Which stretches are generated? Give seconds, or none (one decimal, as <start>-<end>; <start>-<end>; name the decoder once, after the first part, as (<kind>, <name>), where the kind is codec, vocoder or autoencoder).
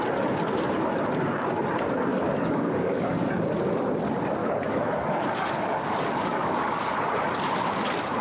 2.1-3.3 (codec, DAC); 4.4-6.9